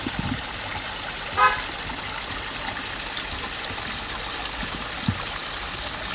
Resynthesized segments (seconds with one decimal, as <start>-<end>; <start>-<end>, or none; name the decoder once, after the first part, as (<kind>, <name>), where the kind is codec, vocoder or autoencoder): none